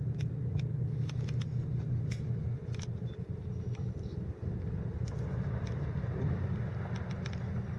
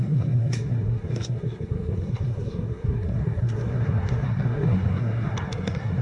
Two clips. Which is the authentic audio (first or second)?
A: first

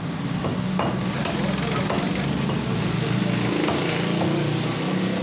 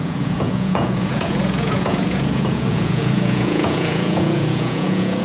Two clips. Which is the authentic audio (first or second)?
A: first